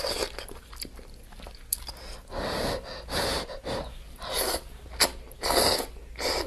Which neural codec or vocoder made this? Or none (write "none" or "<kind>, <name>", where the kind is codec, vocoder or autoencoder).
none